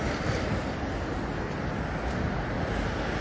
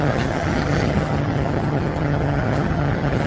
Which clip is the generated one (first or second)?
second